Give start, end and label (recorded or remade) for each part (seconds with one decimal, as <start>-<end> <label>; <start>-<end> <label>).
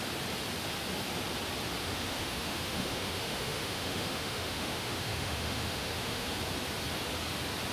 0.0-1.8 recorded; 1.8-6.4 remade; 6.4-7.7 recorded